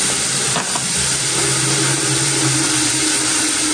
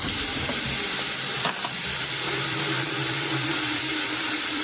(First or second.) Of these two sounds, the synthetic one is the second